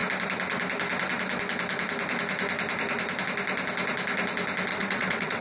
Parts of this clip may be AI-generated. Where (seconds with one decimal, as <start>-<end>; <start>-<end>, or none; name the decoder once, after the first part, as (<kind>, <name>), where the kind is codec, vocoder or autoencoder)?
4.7-5.4 (vocoder, WaveNeXt)